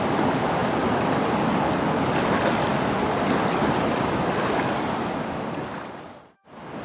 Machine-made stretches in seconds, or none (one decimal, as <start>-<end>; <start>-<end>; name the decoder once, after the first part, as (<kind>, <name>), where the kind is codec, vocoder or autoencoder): none